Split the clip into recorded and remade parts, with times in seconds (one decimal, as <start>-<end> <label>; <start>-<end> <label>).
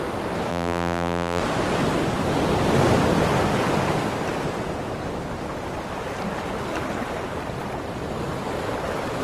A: 0.0-0.5 recorded; 0.5-1.4 remade; 1.4-9.2 recorded